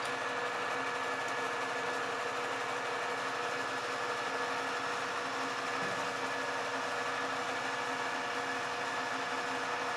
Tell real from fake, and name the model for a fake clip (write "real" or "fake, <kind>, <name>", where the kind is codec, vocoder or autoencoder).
real